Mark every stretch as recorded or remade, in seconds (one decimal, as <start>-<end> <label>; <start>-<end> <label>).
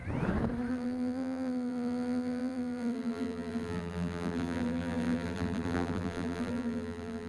0.0-0.7 recorded; 0.7-7.3 remade